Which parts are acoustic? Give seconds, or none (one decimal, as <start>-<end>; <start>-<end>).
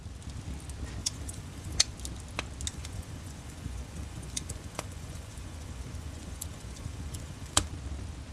0.0-1.0; 1.9-2.7; 7.7-8.3